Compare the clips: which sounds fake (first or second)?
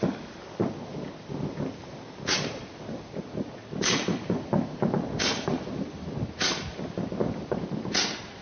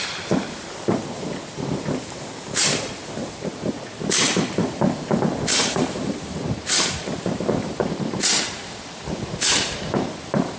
second